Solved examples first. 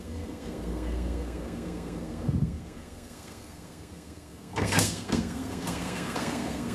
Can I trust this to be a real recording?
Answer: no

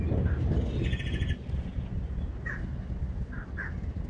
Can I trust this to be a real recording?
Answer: yes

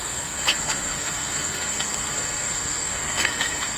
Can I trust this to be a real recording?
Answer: no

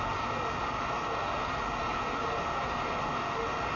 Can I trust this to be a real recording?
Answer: yes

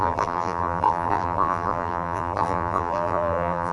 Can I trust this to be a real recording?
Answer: no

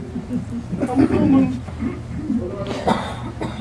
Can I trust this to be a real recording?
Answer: yes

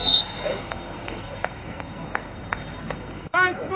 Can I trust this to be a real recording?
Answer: no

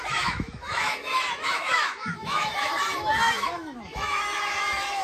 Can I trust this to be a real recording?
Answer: no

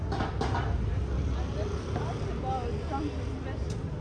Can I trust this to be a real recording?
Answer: yes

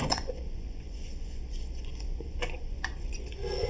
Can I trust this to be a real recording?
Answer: no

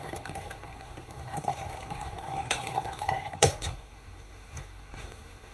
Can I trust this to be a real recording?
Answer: no